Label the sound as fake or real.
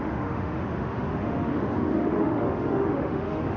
fake